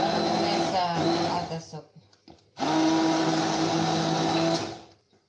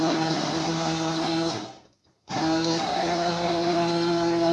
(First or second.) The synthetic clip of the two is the second